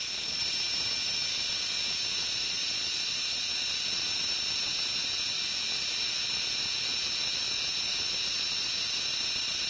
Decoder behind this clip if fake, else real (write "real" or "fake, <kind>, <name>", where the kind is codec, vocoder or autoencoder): real